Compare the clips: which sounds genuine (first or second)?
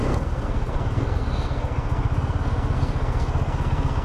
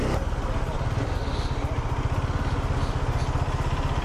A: second